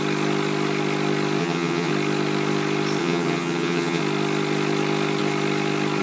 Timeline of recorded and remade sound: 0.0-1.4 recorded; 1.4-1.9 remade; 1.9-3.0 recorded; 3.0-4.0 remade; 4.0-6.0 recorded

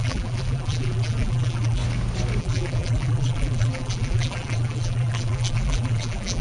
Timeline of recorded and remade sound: 0.0-1.8 remade; 1.8-2.4 recorded; 2.4-6.4 remade

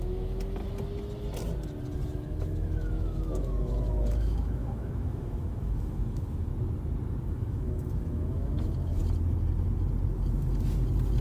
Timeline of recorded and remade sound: 0.0-0.6 remade; 0.6-2.2 recorded; 2.2-6.5 remade; 6.5-7.3 recorded; 7.3-9.0 remade; 9.0-11.2 recorded